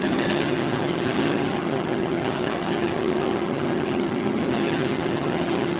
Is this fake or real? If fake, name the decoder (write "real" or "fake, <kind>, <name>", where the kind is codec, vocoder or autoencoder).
fake, vocoder, HiFi-GAN